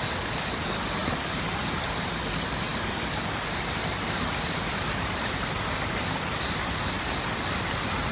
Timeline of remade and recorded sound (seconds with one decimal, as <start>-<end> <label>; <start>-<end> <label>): 0.0-8.1 recorded